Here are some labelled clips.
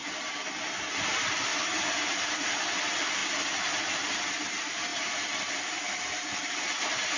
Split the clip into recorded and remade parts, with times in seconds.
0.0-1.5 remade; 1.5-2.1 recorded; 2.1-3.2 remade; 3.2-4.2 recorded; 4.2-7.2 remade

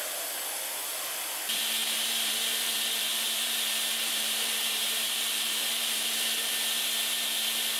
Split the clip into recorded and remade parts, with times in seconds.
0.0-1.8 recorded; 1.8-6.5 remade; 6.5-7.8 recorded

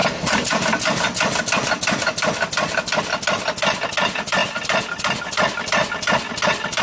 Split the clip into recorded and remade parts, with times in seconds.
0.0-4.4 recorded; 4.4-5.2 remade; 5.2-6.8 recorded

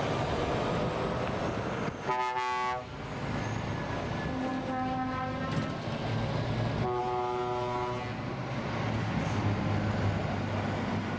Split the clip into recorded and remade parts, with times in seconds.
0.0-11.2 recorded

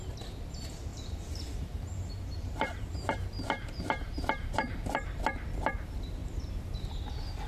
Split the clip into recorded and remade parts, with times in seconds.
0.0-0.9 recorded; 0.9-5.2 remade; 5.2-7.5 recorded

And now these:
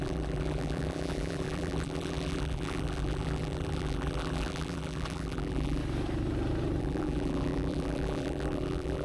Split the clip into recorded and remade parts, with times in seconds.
0.0-5.8 remade; 5.8-6.8 recorded; 6.8-9.0 remade